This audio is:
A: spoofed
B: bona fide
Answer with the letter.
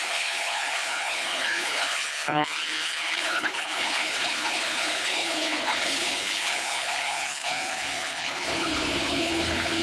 A